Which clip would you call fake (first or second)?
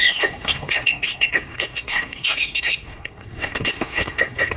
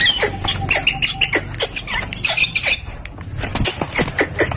first